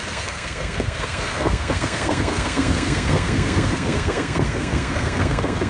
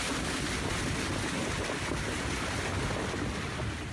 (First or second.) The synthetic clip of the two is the first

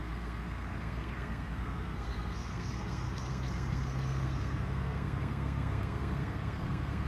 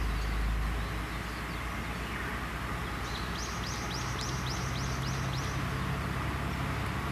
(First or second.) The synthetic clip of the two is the first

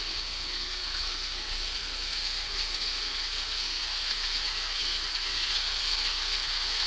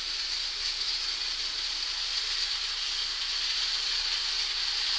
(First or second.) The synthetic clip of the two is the first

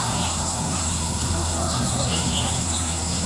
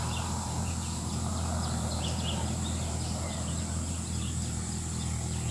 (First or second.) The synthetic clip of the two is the first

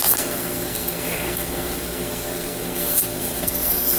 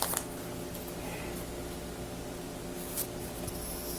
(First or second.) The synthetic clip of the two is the first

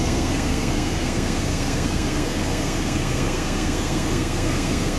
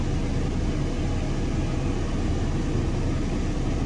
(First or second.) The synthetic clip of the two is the first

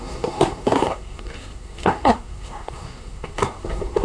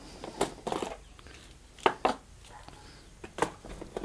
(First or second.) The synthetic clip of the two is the first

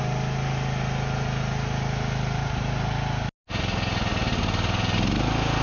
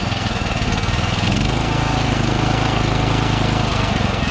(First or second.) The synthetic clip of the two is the second